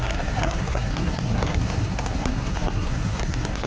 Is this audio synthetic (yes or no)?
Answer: yes